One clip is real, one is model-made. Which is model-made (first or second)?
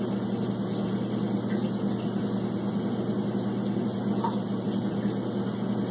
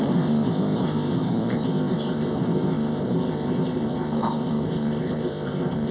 second